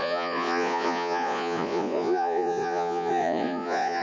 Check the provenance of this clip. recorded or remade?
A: remade